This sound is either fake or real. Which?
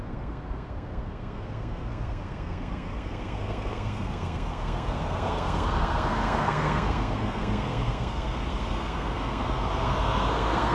fake